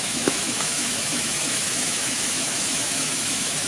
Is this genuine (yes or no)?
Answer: no